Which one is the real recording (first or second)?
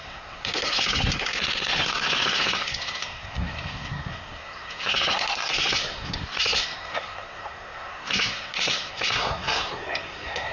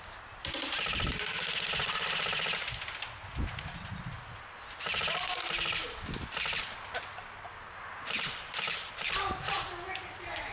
second